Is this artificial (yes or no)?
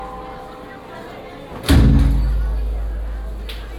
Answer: no